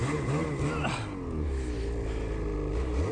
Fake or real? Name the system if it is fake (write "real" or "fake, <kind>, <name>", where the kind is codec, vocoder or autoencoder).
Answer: real